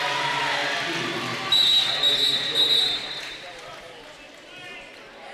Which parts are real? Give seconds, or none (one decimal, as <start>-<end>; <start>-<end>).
0.0-5.3